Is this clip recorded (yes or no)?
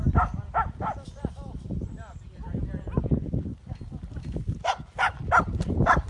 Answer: yes